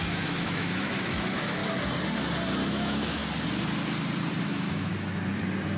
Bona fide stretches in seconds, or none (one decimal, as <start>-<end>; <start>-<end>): 1.6-2.7; 3.2-4.4; 4.9-5.8